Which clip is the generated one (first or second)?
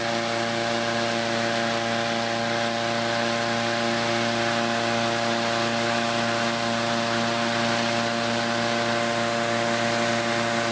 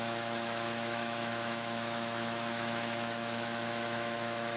second